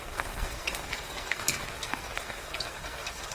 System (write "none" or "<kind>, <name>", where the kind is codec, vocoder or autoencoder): codec, SNAC